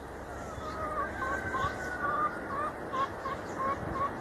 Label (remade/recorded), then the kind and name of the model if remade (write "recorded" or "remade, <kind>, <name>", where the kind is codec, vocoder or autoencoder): remade, vocoder, BigVGAN v2